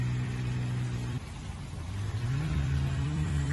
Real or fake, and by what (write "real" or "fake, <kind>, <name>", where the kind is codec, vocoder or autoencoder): fake, vocoder, BigVGAN v2